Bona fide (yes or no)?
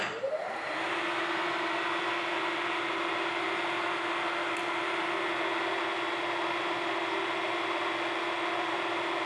yes